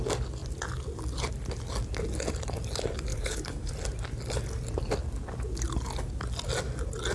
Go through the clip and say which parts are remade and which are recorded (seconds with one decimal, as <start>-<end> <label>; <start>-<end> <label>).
0.0-3.1 recorded; 3.1-3.7 remade; 3.7-7.1 recorded